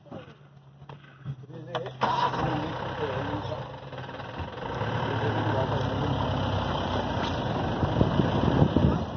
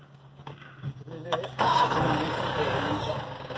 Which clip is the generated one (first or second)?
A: second